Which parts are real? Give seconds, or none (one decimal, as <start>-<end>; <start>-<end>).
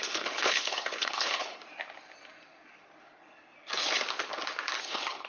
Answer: 1.6-4.8